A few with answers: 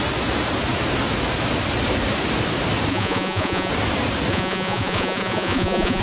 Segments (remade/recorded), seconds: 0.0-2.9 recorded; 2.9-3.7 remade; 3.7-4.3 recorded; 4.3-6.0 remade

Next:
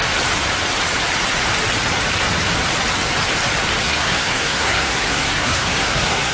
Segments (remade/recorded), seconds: 0.0-3.8 recorded; 3.8-6.3 remade

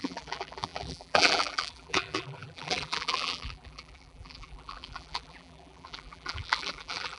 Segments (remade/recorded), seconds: 0.0-7.2 remade

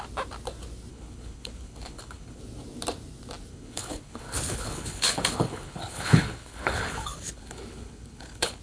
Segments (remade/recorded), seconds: 0.0-0.9 recorded; 0.9-2.4 remade; 2.4-3.5 recorded; 3.5-8.6 remade

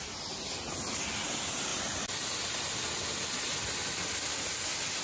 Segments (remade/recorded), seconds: 0.0-5.0 recorded